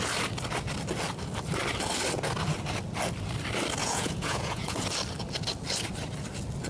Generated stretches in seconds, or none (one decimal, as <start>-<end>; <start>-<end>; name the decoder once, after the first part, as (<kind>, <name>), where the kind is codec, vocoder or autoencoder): 3.8-4.8 (vocoder, Vocos)